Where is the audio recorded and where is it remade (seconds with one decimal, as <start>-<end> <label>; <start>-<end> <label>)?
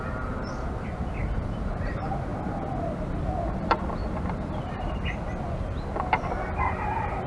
0.0-2.3 remade; 2.3-3.5 recorded; 3.5-4.0 remade; 4.0-6.6 recorded; 6.6-7.3 remade